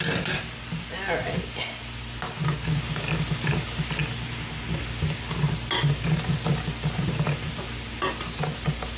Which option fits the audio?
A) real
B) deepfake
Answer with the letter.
A